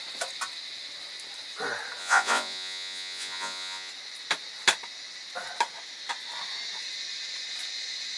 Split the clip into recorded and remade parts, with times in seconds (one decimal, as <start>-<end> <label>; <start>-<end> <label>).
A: 0.0-2.0 recorded; 2.0-3.9 remade; 3.9-8.2 recorded